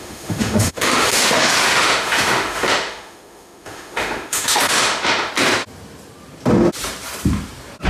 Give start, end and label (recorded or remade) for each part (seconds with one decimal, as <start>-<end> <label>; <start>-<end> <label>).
0.0-5.3 remade; 5.3-7.9 recorded